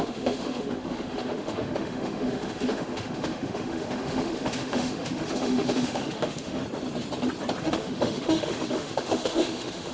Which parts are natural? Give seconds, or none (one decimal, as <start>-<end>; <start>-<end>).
6.6-7.6